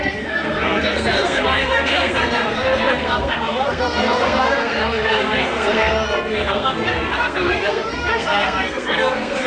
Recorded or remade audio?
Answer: remade